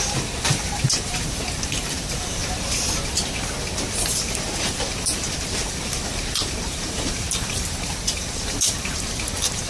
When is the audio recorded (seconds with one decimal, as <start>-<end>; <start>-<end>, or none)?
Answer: 2.4-4.2